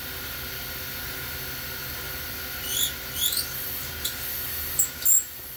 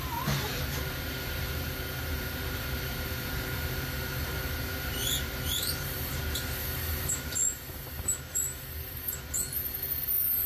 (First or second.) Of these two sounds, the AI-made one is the second